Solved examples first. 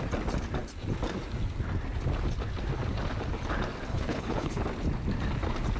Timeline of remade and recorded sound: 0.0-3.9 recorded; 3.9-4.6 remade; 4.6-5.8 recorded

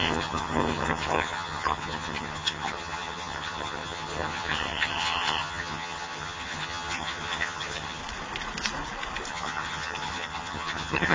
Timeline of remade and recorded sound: 0.0-8.0 remade; 8.0-9.3 recorded; 9.3-11.1 remade

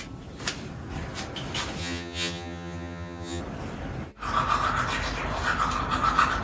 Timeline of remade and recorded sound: 0.0-1.8 recorded; 1.8-3.4 remade; 3.4-6.4 recorded

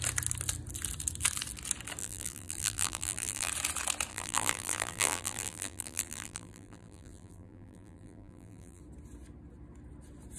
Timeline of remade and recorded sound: 0.0-2.0 recorded; 2.0-3.5 remade; 3.5-4.1 recorded; 4.1-8.8 remade; 8.8-10.4 recorded

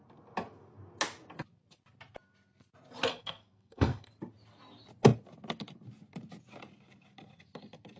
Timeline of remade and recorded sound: 0.0-3.1 recorded; 3.1-4.1 remade; 4.1-8.0 recorded

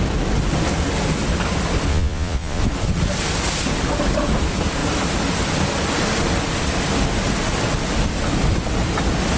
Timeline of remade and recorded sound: 0.0-1.9 recorded; 1.9-2.6 remade; 2.6-9.4 recorded

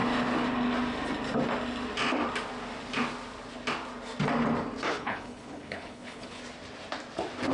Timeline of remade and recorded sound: 0.0-4.9 recorded; 4.9-6.4 remade; 6.4-7.5 recorded